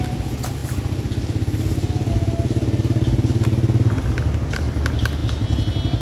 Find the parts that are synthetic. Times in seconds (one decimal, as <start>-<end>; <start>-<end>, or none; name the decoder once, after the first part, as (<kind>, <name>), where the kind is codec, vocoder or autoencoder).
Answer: none

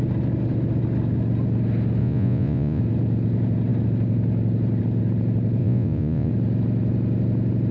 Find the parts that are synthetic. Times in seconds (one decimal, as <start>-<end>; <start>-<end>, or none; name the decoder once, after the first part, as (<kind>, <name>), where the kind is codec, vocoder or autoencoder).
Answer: 2.0-2.8 (vocoder, Vocos); 5.6-6.3

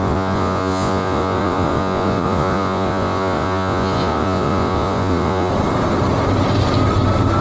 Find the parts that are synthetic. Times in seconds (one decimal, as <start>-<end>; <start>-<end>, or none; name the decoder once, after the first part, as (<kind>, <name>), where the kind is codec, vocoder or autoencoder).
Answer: 0.0-5.5 (vocoder, Vocos)

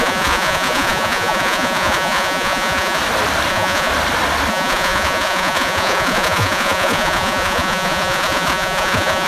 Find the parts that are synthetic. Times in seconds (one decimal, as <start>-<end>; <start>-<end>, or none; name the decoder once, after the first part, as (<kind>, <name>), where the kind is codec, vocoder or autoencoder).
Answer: 0.0-3.0 (vocoder, Vocos); 3.5-3.9; 4.5-9.3

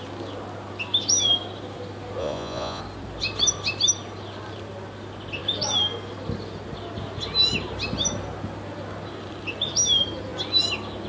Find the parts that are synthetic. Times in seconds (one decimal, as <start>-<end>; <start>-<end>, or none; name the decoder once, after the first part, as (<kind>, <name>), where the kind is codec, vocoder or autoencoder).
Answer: 2.2-2.8 (vocoder, Vocos)

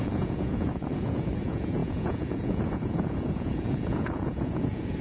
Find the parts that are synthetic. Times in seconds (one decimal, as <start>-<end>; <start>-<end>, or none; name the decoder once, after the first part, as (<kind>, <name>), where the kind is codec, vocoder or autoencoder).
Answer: 0.0-5.0 (vocoder, Vocos)